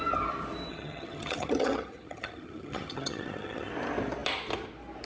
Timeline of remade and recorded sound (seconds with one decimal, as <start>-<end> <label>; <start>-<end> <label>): 0.0-0.7 recorded; 0.7-3.7 remade; 3.7-5.0 recorded